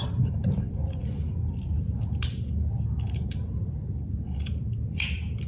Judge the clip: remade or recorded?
recorded